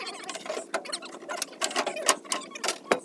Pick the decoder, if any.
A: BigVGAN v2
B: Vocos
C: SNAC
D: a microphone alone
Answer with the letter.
D